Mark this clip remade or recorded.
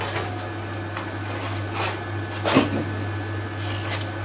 recorded